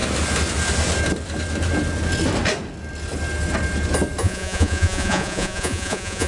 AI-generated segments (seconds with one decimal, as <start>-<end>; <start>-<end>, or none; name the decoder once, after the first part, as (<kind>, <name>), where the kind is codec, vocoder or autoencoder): 4.2-6.3 (vocoder, Vocos)